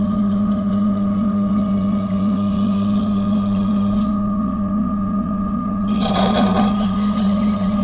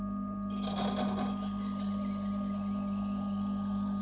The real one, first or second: second